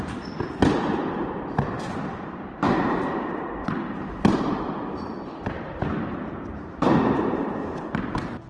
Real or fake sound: fake